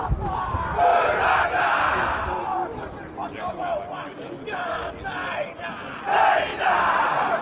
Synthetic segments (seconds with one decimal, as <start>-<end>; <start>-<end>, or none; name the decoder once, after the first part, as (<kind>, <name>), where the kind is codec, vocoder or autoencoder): 0.9-2.8 (vocoder, BigVGAN v2); 6.5-7.4